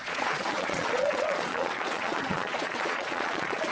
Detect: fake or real fake